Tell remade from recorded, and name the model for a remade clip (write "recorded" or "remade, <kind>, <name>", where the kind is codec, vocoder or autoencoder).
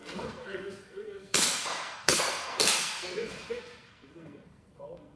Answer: remade, codec, SNAC